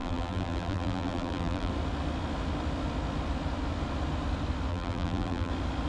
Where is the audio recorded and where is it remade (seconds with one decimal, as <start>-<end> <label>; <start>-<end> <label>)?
0.0-1.7 remade; 1.7-4.7 recorded; 4.7-5.5 remade; 5.5-5.9 recorded